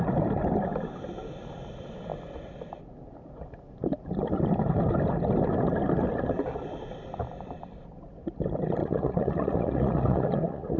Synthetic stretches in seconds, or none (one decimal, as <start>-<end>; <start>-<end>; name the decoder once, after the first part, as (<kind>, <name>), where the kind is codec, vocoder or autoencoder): 8.8-10.8 (vocoder, Vocos)